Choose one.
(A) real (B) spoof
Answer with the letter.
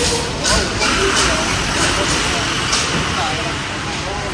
A